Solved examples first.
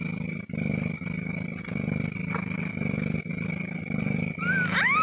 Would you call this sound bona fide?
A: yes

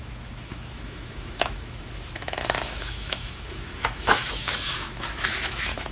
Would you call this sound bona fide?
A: no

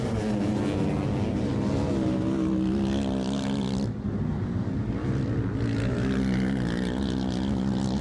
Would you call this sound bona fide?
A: yes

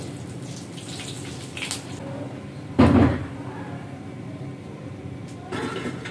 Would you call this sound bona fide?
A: yes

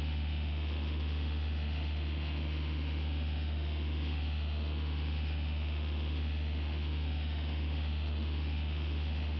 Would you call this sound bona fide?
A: no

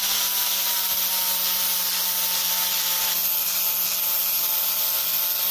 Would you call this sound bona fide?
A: yes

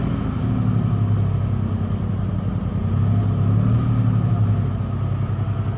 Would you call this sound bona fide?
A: yes